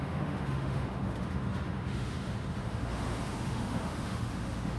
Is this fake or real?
fake